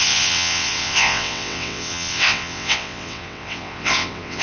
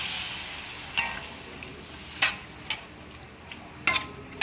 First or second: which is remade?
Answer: first